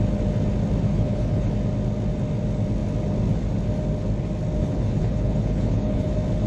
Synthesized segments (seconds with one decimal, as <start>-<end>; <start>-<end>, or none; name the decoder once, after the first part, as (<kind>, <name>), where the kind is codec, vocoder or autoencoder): 0.9-1.5 (codec, HILCodec); 4.6-6.1